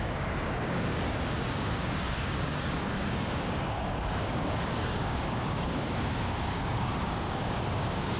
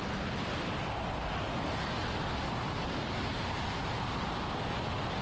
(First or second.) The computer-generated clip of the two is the first